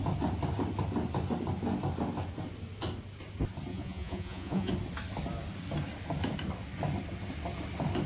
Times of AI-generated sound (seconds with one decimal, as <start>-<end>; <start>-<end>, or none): 3.7-4.7